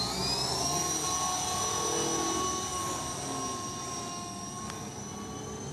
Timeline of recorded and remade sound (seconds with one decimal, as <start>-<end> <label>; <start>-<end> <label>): 0.0-5.7 recorded